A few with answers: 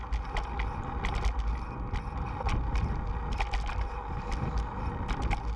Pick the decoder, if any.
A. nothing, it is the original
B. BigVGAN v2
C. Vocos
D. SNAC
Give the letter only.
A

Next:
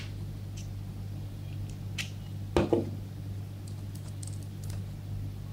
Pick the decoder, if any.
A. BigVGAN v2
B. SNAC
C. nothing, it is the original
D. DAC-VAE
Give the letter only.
C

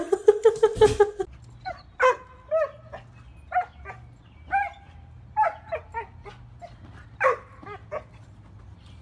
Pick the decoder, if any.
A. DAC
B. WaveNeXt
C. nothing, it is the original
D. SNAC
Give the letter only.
C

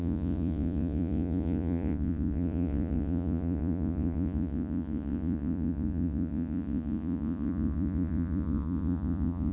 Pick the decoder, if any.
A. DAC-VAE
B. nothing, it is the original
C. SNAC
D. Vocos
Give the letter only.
D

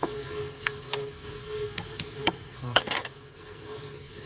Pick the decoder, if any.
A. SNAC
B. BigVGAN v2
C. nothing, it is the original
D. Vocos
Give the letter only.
A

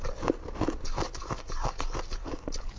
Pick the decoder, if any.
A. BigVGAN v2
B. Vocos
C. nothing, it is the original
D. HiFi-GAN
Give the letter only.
C